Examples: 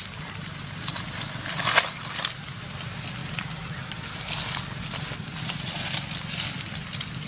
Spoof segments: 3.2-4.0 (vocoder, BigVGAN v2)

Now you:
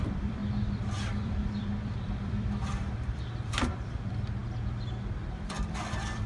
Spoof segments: 0.0-4.4 (vocoder, BigVGAN v2); 5.5-6.3